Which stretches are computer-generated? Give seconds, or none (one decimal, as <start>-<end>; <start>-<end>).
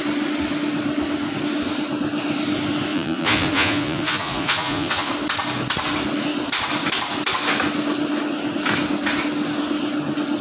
2.9-5.1